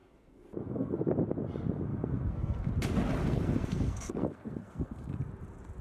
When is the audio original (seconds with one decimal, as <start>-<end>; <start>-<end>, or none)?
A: 1.1-1.9; 2.7-3.2; 5.2-5.8